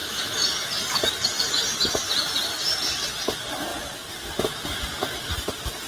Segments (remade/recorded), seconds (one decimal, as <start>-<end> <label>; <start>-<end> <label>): 0.0-5.9 recorded